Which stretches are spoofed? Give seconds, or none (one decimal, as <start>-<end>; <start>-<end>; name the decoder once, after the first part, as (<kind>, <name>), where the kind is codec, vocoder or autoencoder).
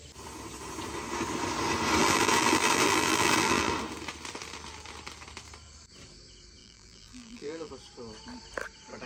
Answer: 2.0-3.7 (vocoder, BigVGAN v2); 6.6-7.7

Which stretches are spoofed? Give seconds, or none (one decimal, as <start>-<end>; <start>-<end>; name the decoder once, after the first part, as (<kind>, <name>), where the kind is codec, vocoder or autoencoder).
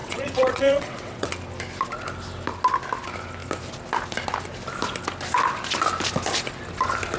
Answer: 0.0-1.3 (vocoder, WaveNeXt)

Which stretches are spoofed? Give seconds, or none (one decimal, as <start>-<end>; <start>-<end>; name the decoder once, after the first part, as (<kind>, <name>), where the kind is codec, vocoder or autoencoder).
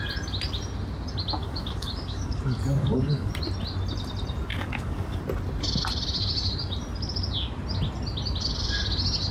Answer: 1.4-3.3 (codec, DAC); 4.5-5.2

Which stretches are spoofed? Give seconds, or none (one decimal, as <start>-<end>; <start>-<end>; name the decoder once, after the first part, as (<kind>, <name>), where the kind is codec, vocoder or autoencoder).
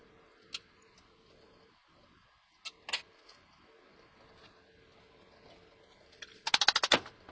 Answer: none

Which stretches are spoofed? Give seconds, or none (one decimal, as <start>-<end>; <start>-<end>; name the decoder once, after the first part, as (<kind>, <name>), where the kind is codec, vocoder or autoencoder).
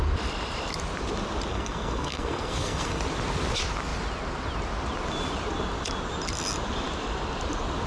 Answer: 1.5-3.0 (codec, SNAC)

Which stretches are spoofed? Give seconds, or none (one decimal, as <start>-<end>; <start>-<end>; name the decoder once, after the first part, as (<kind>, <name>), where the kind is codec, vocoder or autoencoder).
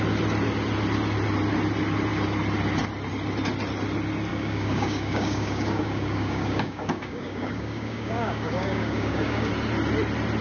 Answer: 4.3-9.5 (codec, DAC)